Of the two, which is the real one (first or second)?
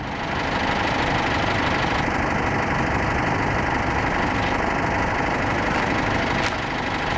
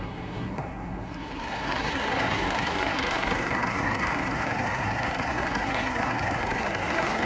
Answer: first